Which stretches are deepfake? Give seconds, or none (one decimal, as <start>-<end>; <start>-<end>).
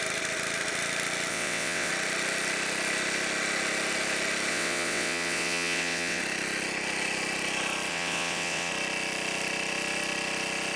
1.3-1.9; 4.5-6.2; 7.9-8.7